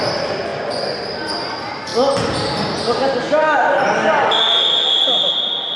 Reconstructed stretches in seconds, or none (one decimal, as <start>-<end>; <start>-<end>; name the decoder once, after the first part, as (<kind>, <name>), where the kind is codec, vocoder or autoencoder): 0.5-1.0 (vocoder, Vocos)